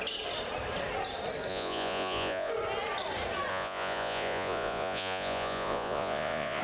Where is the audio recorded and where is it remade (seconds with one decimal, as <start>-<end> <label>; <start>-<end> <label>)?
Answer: 0.0-1.5 recorded; 1.5-2.5 remade; 2.5-3.5 recorded; 3.5-6.6 remade